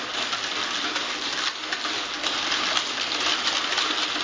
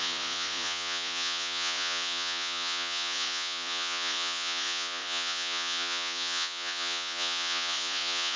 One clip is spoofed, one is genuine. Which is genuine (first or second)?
first